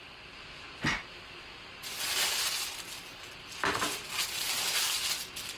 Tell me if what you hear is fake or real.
real